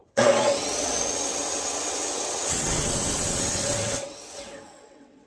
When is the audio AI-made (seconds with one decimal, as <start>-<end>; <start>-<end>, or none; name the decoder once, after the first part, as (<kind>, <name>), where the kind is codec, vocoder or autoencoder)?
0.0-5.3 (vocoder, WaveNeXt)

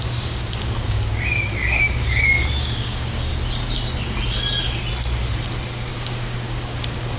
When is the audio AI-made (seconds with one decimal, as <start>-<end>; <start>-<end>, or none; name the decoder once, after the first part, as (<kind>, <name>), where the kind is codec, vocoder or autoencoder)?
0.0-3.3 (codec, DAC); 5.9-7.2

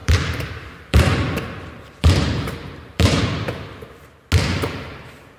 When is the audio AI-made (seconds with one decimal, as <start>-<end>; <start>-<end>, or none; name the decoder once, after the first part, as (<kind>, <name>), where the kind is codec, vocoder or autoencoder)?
0.0-3.2 (vocoder, BigVGAN v2)

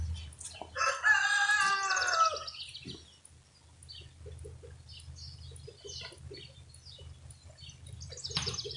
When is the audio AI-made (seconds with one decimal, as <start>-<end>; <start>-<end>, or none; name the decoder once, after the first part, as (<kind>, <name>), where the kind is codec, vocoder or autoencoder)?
none